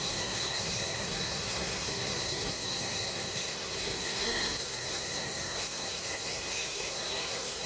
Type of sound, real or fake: fake